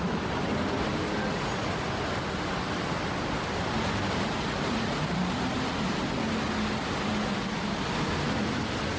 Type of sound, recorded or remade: recorded